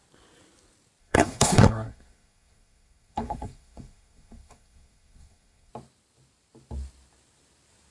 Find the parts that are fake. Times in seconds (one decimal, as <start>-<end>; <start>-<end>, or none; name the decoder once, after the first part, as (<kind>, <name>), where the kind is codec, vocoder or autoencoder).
1.0-5.7 (codec, SNAC)